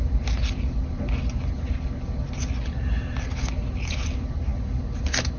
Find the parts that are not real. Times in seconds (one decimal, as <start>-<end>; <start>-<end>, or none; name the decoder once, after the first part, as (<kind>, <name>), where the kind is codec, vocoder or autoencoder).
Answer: none